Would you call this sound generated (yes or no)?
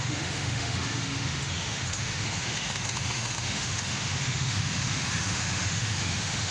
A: yes